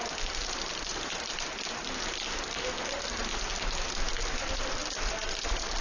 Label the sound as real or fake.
real